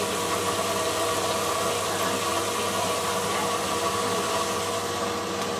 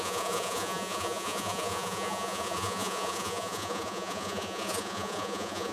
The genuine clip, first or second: first